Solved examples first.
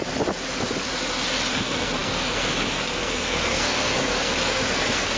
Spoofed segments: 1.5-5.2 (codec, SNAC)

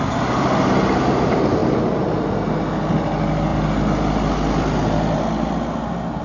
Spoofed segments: none

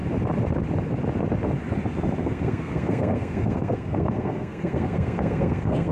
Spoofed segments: 2.2-5.9 (codec, SNAC)

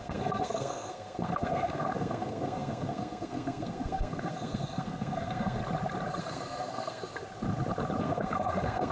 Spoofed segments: 0.0-5.6 (codec, SNAC); 6.2-7.0; 8.0-8.9

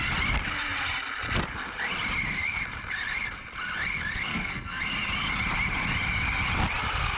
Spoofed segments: 4.3-4.8 (codec, SNAC)

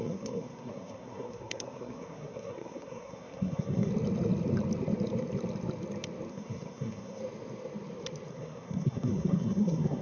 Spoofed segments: 0.0-3.9 (codec, SNAC); 6.3-7.2; 8.3-10.0

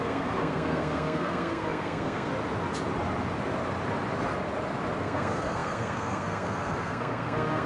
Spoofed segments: 0.0-2.3 (codec, SNAC); 5.0-7.7